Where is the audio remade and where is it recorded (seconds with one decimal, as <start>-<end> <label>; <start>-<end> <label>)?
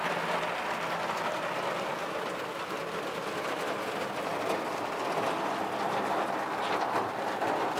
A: 0.0-7.8 recorded